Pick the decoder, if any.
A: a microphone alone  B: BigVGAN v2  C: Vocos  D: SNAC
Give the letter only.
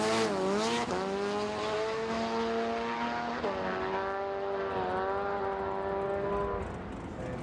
A